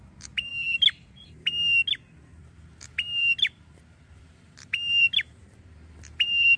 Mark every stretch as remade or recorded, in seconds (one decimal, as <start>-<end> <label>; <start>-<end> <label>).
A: 0.0-6.6 recorded